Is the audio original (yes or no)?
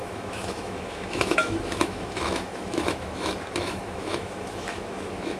no